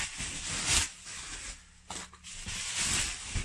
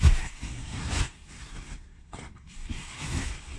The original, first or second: first